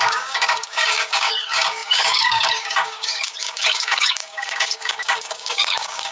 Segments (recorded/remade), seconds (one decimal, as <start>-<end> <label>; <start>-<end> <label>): 0.0-6.1 remade